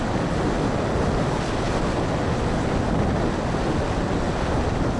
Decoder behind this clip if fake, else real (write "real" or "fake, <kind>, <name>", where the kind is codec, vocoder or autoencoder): real